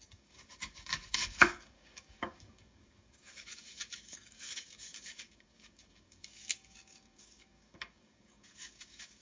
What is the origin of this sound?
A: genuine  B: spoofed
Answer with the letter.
B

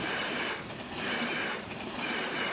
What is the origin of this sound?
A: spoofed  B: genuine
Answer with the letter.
B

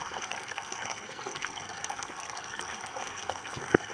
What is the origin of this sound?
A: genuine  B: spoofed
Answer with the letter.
B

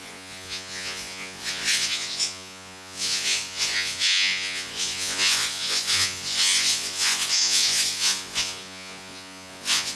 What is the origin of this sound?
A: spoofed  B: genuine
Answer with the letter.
A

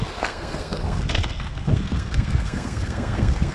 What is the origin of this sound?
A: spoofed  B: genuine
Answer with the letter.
A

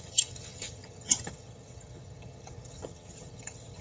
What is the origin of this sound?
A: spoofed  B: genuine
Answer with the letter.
A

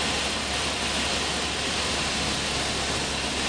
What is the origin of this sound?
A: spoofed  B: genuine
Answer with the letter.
B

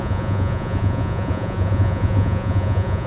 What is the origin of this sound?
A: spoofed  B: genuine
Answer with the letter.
A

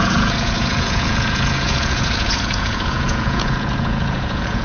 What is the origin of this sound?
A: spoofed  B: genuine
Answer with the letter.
A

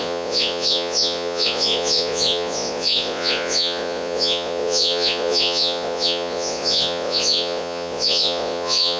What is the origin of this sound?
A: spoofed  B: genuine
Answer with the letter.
A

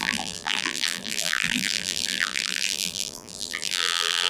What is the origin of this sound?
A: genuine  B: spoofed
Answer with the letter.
B